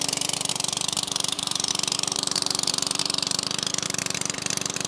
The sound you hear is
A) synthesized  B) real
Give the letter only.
A